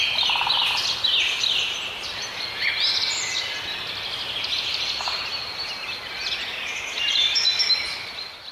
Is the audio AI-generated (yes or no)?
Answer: no